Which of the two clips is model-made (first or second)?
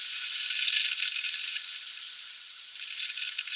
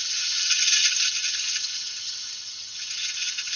second